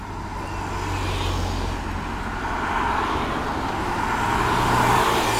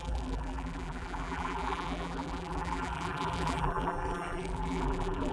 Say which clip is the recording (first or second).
first